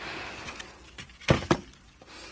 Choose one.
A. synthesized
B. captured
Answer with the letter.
A